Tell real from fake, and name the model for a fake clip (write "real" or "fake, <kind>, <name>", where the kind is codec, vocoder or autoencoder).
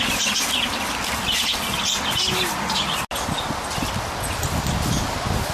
real